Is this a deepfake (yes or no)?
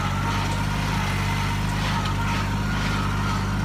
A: no